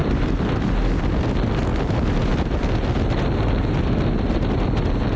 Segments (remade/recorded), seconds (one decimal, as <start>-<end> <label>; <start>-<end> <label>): 0.0-0.5 remade; 0.5-1.7 recorded; 1.7-2.3 remade; 2.3-5.2 recorded